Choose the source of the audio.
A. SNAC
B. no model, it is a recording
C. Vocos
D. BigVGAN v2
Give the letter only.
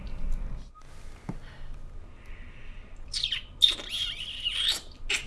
B